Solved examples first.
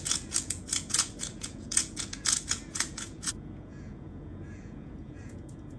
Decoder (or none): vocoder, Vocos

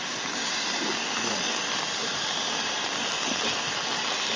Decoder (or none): none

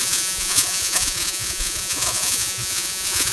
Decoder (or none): vocoder, Vocos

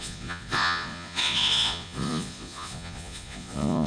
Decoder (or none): vocoder, Vocos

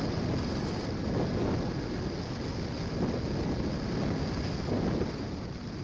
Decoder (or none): none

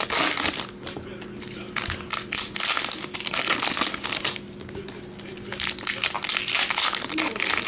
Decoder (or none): none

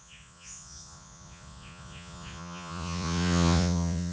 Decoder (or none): vocoder, Vocos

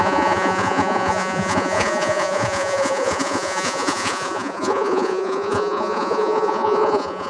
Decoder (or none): vocoder, Vocos